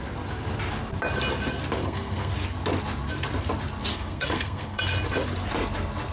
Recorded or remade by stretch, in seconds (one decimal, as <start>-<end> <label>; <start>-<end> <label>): 0.0-1.8 recorded; 1.8-2.3 remade; 2.3-3.9 recorded; 3.9-4.8 remade; 4.8-6.1 recorded